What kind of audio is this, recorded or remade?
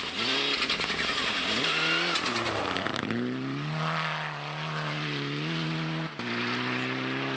recorded